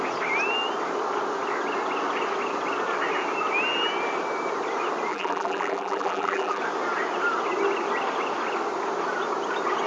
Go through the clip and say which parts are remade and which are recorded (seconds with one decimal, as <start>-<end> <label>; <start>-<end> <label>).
0.0-5.1 recorded; 5.1-6.6 remade; 6.6-9.9 recorded